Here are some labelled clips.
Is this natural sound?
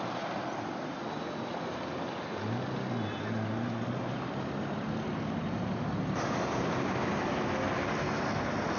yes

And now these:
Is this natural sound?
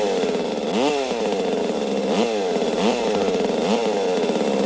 yes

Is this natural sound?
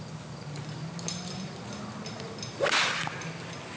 yes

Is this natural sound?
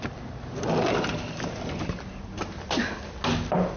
yes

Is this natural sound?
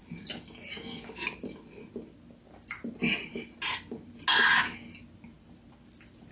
yes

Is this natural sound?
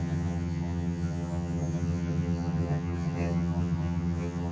no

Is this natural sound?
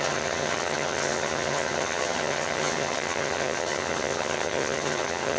no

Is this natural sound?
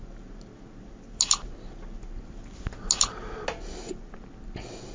yes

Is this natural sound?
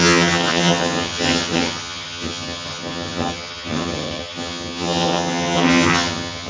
no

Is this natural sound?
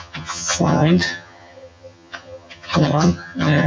no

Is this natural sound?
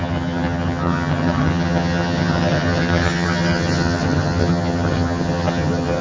no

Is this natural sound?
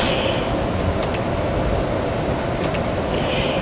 yes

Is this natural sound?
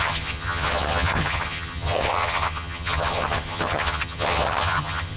no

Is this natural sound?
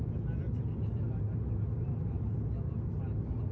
yes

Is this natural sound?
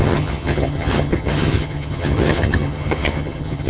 no